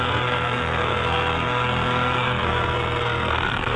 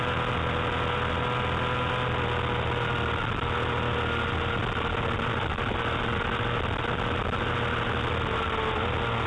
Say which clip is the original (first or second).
second